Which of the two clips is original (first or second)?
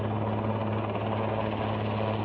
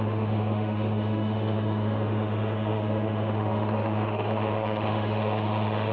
first